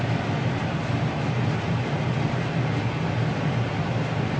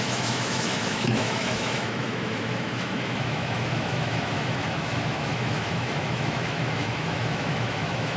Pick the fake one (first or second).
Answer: second